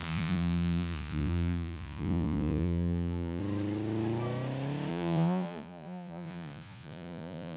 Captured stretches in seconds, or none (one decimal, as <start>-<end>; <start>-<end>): 3.4-4.9